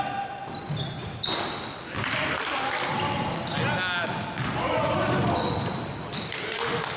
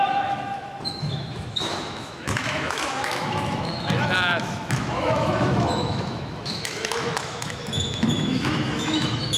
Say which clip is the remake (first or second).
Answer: second